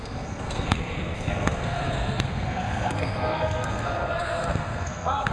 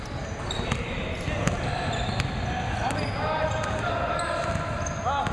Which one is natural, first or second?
second